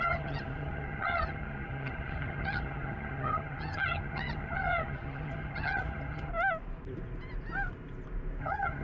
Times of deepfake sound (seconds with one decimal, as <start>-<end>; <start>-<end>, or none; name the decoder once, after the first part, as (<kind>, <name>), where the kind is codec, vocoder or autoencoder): 0.0-6.3 (vocoder, HiFi-GAN); 8.4-8.8